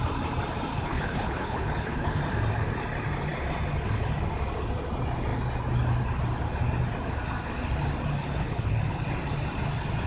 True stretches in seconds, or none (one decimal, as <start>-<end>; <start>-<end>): 0.0-0.7; 2.2-8.2; 8.8-10.1